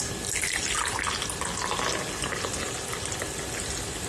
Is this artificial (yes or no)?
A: no